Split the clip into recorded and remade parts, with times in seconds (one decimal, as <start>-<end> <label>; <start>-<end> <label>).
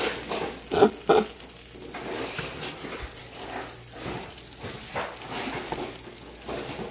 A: 0.0-6.9 recorded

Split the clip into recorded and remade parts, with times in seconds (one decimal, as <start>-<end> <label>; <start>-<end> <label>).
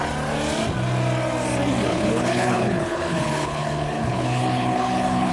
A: 0.0-1.9 recorded; 1.9-5.3 remade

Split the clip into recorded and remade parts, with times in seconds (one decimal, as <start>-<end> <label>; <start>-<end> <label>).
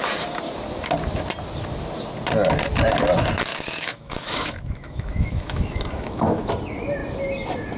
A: 0.0-3.5 recorded; 3.5-6.5 remade; 6.5-7.8 recorded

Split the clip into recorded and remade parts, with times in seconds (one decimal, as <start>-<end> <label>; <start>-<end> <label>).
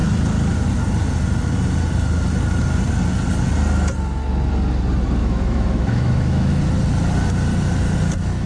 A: 0.0-5.2 recorded; 5.2-6.6 remade; 6.6-8.5 recorded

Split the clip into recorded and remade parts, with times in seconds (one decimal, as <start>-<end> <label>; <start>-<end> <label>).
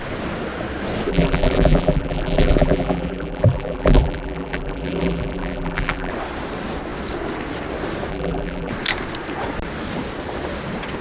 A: 0.0-1.1 recorded; 1.1-6.1 remade; 6.1-8.1 recorded; 8.1-8.7 remade; 8.7-11.0 recorded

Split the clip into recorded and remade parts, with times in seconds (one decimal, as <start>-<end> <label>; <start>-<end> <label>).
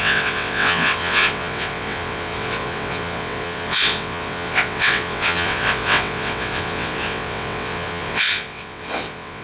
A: 0.0-9.4 remade